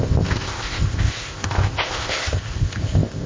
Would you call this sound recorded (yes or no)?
no